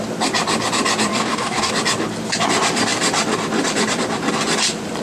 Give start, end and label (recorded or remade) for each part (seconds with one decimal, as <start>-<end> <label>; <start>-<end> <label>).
0.0-1.1 recorded; 1.1-1.7 remade; 1.7-5.0 recorded